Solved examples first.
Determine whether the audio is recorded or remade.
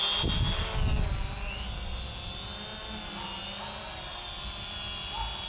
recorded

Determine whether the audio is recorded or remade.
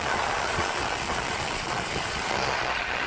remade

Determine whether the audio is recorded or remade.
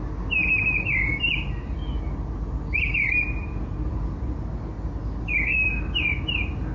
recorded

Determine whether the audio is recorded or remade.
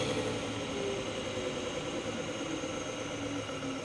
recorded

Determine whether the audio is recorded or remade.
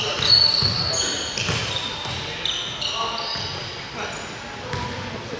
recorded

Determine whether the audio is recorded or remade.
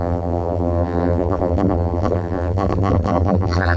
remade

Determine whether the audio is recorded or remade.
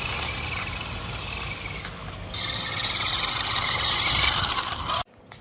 recorded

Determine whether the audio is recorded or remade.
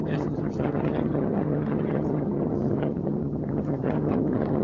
remade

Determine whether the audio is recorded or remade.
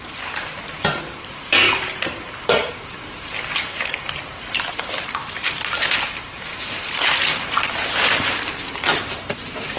remade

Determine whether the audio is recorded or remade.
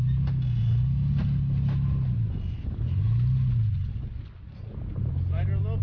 recorded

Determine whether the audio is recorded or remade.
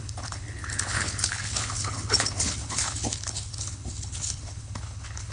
remade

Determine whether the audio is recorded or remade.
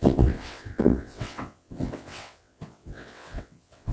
remade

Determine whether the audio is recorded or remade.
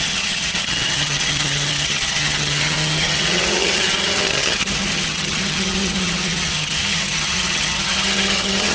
remade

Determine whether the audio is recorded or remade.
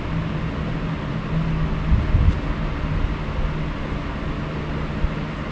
recorded